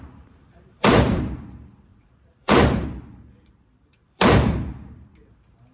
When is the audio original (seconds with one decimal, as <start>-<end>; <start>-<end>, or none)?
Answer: none